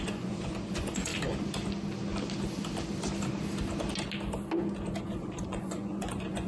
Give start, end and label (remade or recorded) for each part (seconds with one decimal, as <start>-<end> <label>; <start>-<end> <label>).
0.0-1.1 remade; 1.1-5.0 recorded; 5.0-6.5 remade